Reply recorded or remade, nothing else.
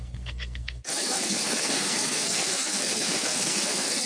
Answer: remade